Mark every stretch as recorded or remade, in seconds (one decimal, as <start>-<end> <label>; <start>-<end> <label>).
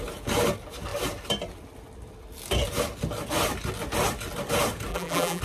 0.0-4.9 recorded; 4.9-5.4 remade